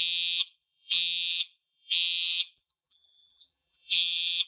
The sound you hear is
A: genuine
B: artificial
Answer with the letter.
B